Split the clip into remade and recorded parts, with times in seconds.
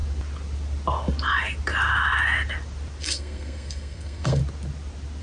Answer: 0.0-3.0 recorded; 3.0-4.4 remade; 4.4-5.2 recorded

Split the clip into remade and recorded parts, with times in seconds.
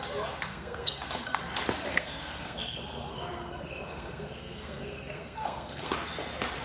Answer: 0.0-0.5 recorded; 0.5-1.4 remade; 1.4-1.9 recorded; 1.9-5.9 remade; 5.9-6.6 recorded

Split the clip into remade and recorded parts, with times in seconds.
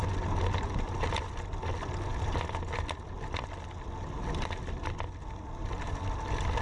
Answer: 0.0-6.6 recorded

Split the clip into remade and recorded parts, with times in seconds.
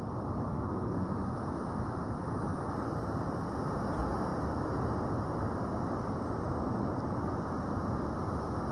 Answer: 0.0-0.5 recorded; 0.5-1.1 remade; 1.1-8.7 recorded